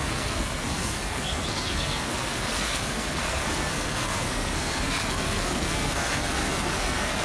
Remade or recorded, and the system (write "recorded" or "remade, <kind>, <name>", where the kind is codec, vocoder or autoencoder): remade, codec, SNAC